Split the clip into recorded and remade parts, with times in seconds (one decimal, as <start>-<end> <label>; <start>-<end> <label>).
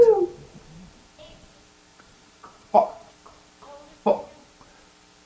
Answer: 0.0-1.9 recorded; 1.9-3.1 remade; 3.1-5.3 recorded